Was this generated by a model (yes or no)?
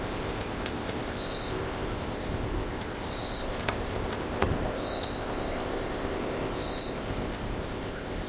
yes